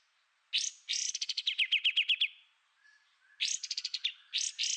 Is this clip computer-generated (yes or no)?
no